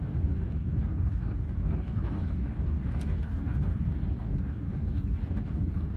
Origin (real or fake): fake